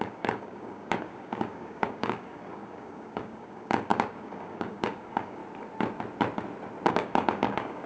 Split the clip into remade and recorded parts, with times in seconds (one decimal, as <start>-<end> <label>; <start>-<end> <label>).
0.0-5.4 remade; 5.4-6.9 recorded; 6.9-7.9 remade